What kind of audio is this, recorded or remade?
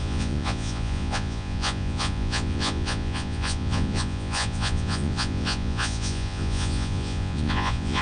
remade